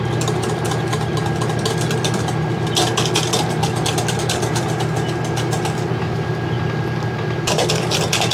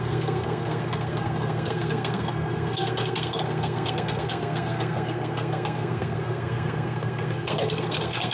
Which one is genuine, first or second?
first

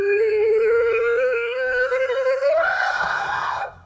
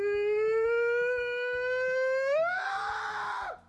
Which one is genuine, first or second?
second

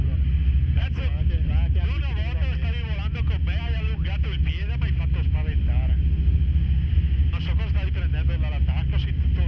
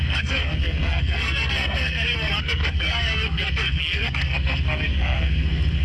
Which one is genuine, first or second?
first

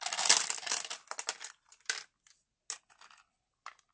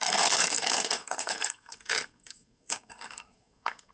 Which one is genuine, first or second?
first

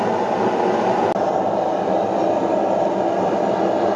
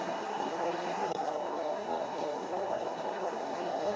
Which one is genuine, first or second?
first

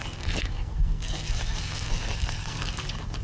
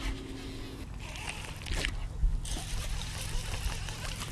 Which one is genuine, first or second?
second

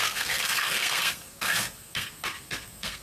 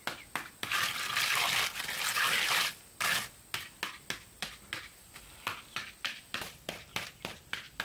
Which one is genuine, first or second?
second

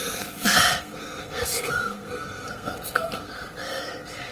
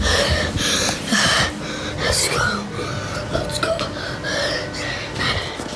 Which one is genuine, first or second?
second